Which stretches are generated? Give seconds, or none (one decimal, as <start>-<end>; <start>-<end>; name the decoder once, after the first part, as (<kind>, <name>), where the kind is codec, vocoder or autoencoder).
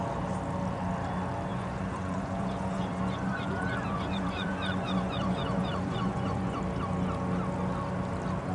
1.5-6.6 (vocoder, Vocos)